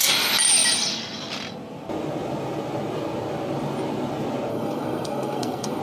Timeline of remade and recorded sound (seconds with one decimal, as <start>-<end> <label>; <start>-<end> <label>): 0.0-4.5 recorded; 4.5-5.8 remade